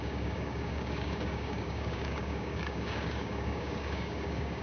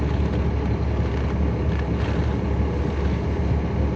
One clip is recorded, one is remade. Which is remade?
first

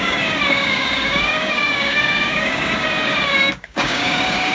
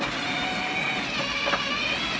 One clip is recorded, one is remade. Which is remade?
first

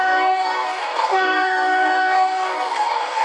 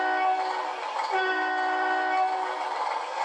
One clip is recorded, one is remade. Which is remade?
first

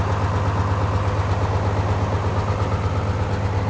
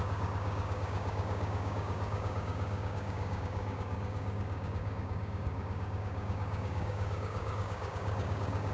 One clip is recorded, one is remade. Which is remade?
second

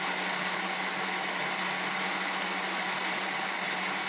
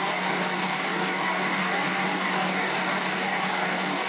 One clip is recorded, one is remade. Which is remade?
second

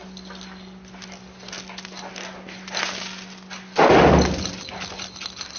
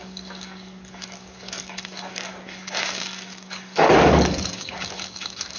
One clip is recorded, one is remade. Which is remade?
second